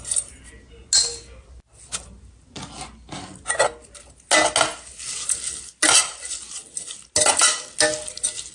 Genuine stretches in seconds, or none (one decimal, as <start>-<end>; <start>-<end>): 0.0-8.5